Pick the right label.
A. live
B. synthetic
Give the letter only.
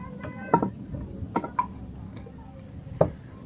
A